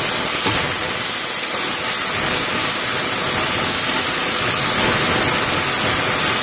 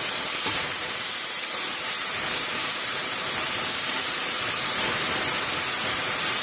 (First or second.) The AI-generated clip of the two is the second